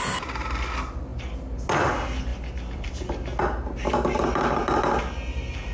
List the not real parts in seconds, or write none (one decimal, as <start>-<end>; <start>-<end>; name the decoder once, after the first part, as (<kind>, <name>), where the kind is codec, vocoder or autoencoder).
none